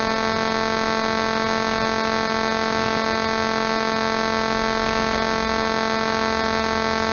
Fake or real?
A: real